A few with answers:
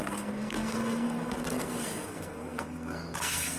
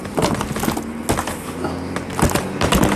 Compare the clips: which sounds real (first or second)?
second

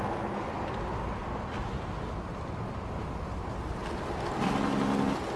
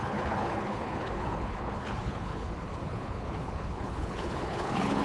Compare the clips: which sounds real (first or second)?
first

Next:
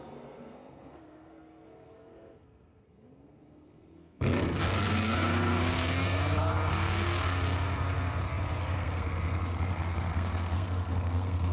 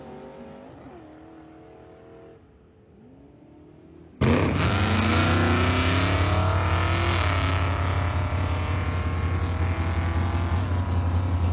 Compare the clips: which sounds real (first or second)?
second